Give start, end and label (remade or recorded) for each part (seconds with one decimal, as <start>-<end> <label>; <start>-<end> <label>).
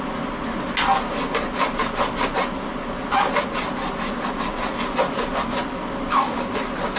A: 0.0-7.0 recorded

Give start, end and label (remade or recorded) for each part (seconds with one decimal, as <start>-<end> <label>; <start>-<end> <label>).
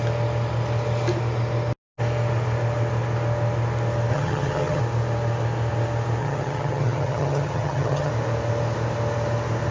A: 0.0-4.1 recorded; 4.1-4.8 remade; 4.8-6.2 recorded; 6.2-8.1 remade; 8.1-9.7 recorded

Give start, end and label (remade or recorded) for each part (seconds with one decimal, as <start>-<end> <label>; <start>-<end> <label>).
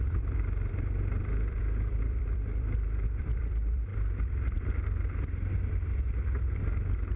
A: 0.0-3.9 remade; 3.9-4.6 recorded; 4.6-7.2 remade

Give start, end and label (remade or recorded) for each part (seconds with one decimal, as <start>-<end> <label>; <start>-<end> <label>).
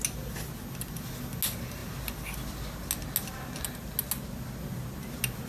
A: 0.0-5.5 recorded